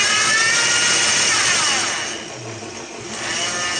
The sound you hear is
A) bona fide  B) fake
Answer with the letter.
A